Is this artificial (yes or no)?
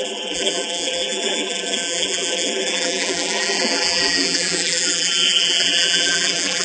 yes